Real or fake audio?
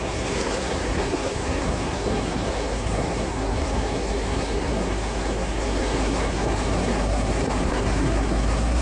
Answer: fake